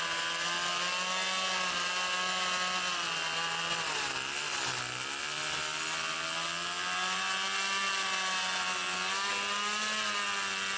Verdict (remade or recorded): recorded